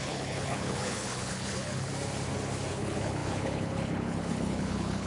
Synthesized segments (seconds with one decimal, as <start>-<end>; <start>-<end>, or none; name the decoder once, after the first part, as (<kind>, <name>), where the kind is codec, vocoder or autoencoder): 0.0-1.9 (codec, HILCodec); 2.7-5.1